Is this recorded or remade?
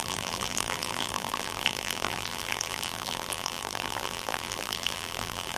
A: remade